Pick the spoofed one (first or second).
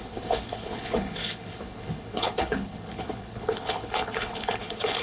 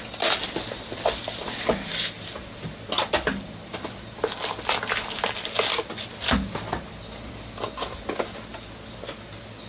first